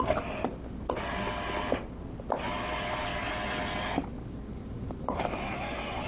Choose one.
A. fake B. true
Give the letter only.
B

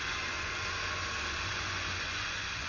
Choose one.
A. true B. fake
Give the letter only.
B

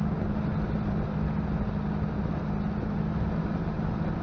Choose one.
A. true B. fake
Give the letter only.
A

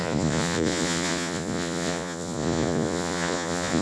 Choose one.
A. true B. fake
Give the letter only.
B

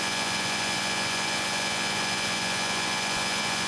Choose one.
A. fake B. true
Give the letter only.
A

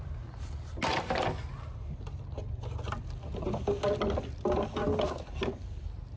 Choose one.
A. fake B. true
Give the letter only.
B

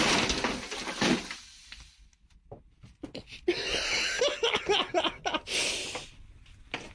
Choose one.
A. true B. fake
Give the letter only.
A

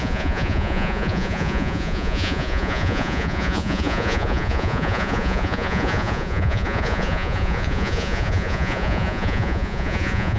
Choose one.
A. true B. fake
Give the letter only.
B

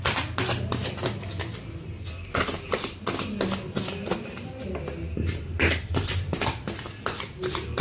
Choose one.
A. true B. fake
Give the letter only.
A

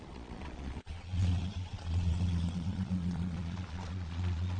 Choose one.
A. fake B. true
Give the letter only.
A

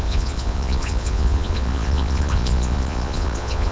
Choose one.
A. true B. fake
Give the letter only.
B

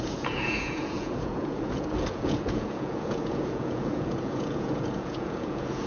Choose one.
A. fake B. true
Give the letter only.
A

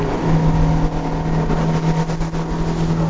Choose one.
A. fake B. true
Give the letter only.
B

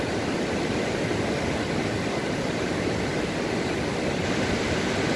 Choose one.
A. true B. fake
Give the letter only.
A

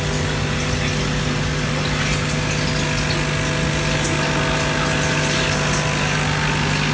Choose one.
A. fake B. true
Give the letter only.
B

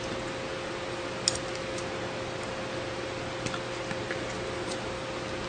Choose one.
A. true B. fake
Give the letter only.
A